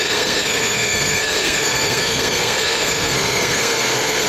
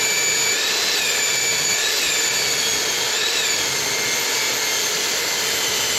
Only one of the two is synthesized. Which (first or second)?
first